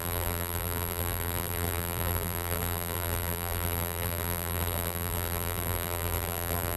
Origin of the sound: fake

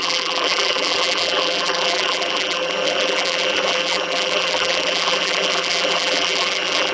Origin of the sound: fake